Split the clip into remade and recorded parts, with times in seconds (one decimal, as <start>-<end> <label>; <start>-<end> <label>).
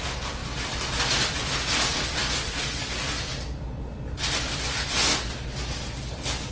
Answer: 0.0-6.5 recorded